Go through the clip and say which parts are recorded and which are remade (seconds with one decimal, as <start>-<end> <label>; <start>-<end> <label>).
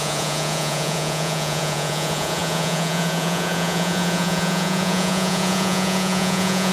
0.0-6.7 remade